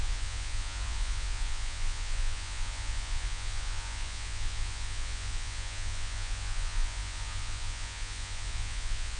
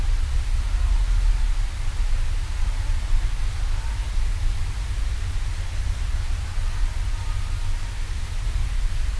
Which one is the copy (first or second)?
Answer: first